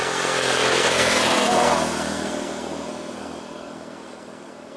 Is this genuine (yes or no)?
no